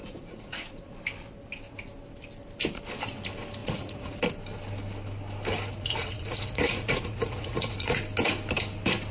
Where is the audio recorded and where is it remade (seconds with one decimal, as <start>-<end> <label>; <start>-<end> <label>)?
0.0-1.0 remade; 1.0-3.6 recorded; 3.6-4.2 remade; 4.2-5.7 recorded; 5.7-8.0 remade; 8.0-9.1 recorded